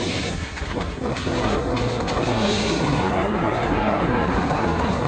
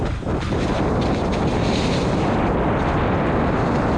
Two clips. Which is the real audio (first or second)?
second